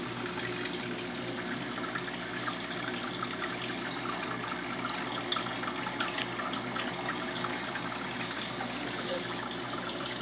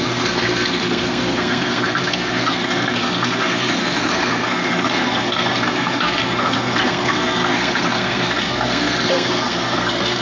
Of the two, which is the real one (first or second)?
first